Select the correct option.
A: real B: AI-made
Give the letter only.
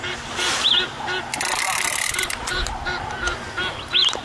A